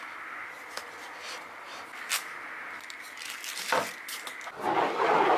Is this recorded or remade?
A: recorded